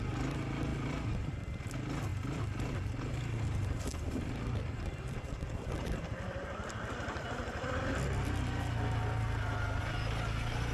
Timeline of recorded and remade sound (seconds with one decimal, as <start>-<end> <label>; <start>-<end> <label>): 0.0-0.7 recorded; 0.7-1.5 remade; 1.5-2.1 recorded; 2.1-3.2 remade; 3.2-3.9 recorded; 3.9-7.4 remade; 7.4-10.7 recorded